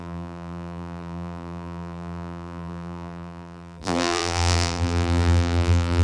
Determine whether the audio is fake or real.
fake